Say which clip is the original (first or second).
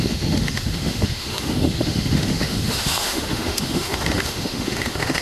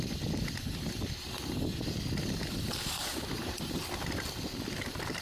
second